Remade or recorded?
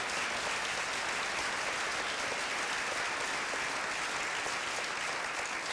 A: recorded